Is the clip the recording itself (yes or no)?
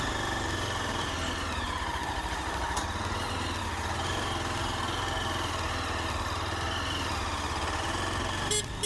yes